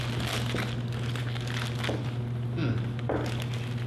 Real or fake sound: real